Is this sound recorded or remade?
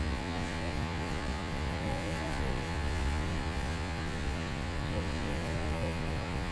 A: remade